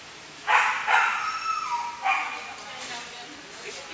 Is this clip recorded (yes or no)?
yes